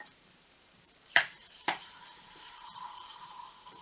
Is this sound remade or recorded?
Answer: remade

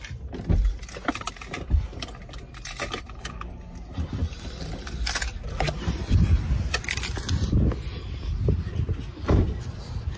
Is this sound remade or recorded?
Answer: recorded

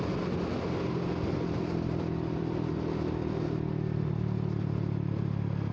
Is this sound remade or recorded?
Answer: recorded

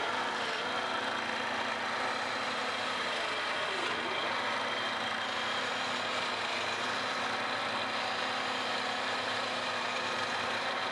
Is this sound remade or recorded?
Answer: recorded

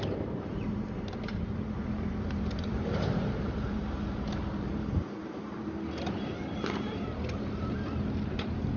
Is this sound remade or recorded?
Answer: remade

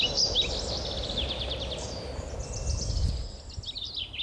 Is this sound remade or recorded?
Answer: recorded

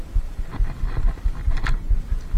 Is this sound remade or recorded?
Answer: recorded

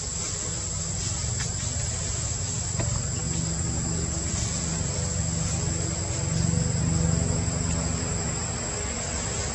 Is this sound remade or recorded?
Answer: recorded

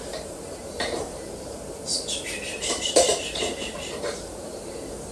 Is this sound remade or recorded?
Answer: remade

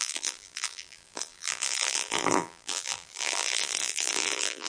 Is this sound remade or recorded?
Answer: remade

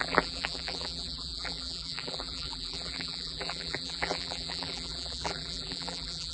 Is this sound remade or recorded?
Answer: remade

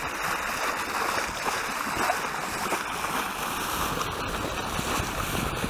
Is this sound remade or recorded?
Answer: recorded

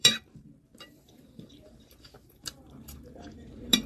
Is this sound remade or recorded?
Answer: remade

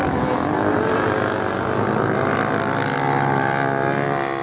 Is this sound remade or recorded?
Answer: recorded